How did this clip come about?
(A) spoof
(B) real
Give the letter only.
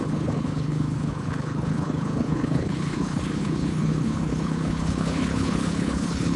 A